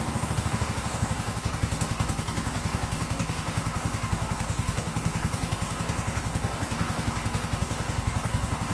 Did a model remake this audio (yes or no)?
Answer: yes